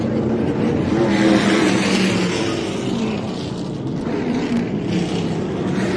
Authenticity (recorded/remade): recorded